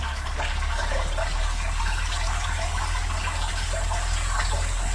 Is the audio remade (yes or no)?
yes